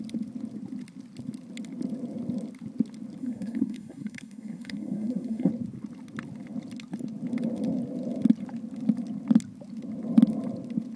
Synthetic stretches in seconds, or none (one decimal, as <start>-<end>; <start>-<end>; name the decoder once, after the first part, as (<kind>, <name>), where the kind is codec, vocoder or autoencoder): 3.2-5.5 (codec, SNAC)